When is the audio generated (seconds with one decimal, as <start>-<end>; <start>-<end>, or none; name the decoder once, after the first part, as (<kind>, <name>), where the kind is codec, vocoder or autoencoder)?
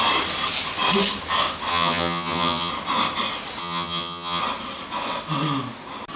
1.7-2.7 (vocoder, HiFi-GAN); 3.6-4.4